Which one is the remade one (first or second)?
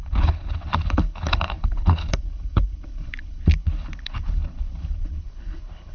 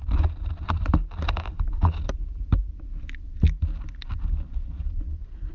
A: first